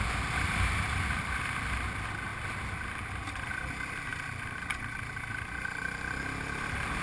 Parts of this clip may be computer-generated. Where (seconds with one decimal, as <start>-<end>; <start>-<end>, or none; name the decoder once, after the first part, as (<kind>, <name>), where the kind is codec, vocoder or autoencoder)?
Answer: none